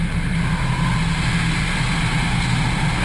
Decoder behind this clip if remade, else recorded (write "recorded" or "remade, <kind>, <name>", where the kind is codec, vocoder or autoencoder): recorded